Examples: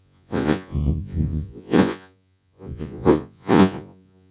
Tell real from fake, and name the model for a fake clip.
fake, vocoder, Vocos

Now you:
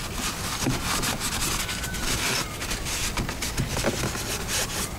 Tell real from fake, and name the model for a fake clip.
real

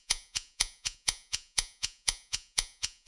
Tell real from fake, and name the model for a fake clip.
fake, vocoder, Vocos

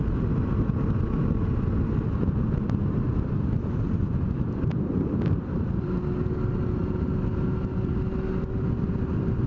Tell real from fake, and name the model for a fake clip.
real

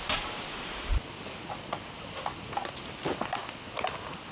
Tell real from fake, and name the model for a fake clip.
real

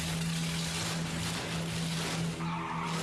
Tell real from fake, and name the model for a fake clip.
real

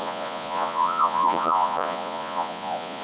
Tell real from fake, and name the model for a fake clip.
fake, vocoder, Vocos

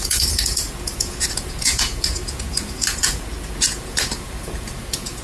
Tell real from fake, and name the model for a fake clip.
fake, vocoder, Vocos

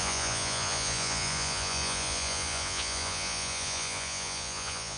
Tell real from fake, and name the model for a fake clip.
fake, vocoder, Vocos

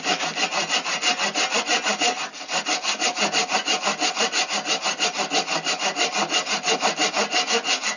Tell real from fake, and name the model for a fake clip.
real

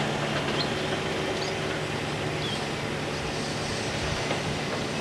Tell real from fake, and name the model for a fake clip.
real